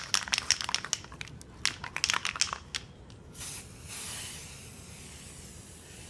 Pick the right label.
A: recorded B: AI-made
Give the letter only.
A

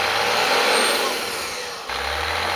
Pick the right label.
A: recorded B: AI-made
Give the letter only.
A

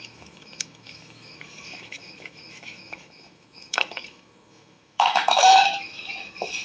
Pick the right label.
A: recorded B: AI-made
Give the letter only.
B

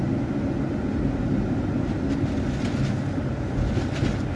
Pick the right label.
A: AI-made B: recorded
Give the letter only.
B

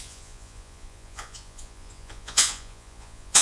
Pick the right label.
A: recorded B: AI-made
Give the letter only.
B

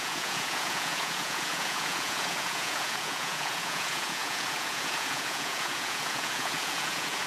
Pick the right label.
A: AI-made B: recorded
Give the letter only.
A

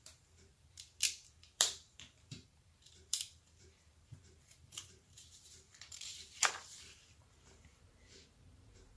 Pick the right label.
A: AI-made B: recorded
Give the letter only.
A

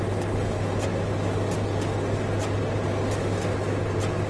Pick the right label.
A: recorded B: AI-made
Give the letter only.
A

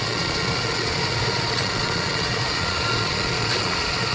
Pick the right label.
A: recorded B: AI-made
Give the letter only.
B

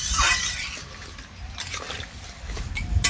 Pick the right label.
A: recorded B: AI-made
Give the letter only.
A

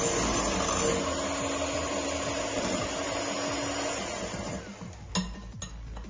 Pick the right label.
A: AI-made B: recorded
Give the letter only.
B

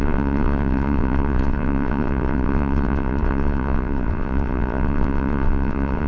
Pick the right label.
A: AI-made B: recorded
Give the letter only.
A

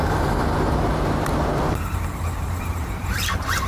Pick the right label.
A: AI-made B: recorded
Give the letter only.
B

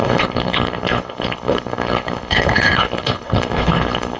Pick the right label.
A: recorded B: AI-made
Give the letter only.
B